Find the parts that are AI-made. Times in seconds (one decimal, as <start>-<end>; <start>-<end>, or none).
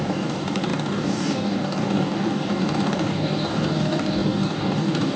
0.0-5.2